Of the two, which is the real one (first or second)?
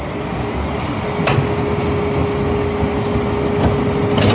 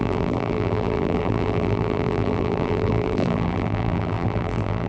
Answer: first